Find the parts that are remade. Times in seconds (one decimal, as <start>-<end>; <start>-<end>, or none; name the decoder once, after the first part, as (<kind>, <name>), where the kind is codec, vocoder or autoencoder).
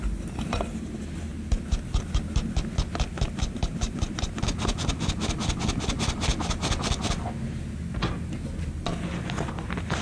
1.3-4.2 (vocoder, BigVGAN v2); 6.3-7.6